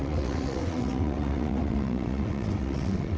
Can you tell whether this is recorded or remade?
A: remade